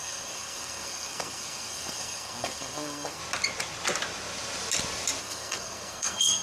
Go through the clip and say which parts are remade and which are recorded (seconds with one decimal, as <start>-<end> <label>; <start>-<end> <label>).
0.0-3.2 remade; 3.2-5.2 recorded; 5.2-6.4 remade